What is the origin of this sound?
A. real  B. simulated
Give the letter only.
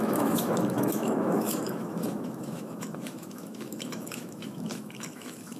B